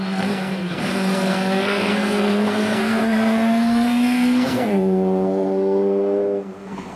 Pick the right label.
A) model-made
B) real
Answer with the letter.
A